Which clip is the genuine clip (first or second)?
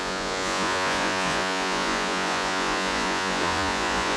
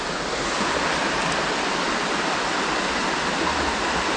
second